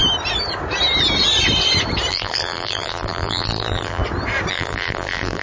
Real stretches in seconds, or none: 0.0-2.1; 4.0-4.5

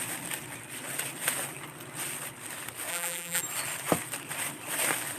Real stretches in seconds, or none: 0.0-2.9; 3.4-5.2

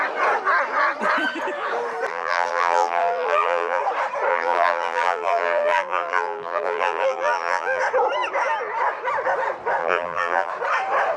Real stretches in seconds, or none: 0.0-2.1; 3.8-4.3; 7.8-9.8; 10.5-11.2

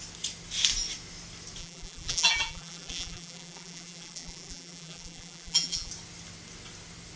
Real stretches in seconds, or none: 0.0-1.6; 5.9-7.2